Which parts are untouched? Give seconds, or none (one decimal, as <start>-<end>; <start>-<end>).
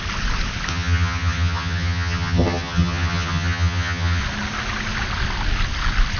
0.0-0.7; 4.2-6.2